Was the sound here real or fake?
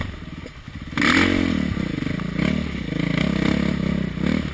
real